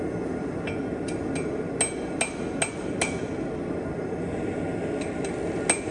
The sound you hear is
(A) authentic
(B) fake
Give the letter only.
A